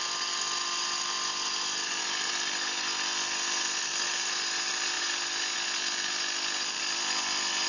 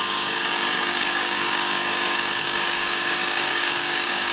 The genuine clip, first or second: first